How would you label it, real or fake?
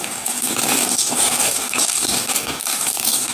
fake